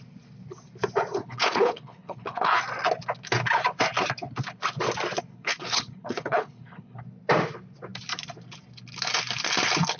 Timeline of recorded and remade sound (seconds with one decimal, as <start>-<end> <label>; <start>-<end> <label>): 0.0-1.2 recorded; 1.2-2.5 remade; 2.5-5.3 recorded; 5.3-7.0 remade; 7.0-10.0 recorded